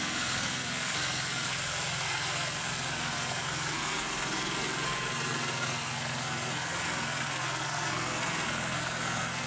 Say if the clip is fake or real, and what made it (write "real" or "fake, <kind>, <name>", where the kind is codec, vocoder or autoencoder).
fake, codec, SNAC